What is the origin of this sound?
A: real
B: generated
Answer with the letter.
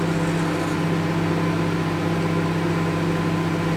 A